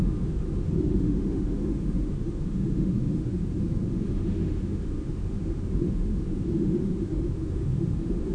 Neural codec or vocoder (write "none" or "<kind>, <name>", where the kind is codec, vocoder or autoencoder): autoencoder, DAC-VAE